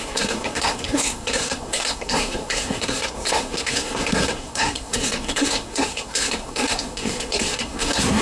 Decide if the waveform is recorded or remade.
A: remade